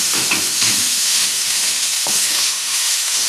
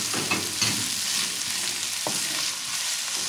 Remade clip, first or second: first